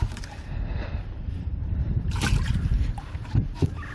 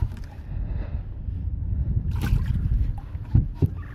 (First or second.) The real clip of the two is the second